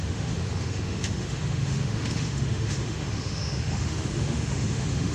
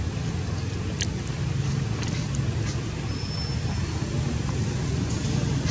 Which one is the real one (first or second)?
second